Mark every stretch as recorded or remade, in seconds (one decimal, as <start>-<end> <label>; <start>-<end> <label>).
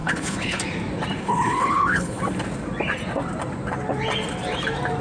0.0-0.6 remade; 0.6-1.2 recorded; 1.2-2.2 remade; 2.2-5.0 recorded